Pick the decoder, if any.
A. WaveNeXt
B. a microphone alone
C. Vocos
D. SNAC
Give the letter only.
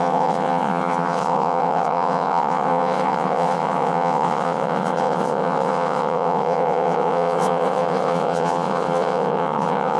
A